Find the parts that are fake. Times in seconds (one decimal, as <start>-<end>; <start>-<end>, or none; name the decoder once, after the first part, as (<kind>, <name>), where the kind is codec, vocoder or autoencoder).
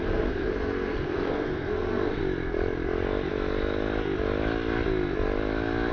0.0-2.2 (codec, SNAC)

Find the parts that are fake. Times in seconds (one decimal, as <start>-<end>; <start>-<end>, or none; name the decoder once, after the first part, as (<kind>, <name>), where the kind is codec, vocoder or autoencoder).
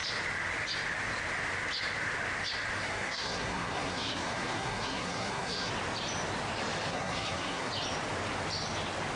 2.8-5.7 (codec, SNAC); 6.9-7.7